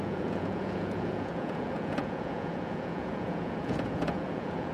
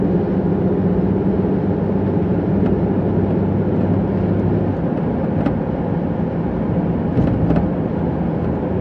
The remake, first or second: first